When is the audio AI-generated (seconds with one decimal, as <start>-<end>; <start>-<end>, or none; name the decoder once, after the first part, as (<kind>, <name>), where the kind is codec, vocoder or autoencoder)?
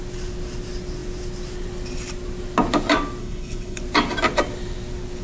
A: 3.2-3.8 (codec, HILCodec)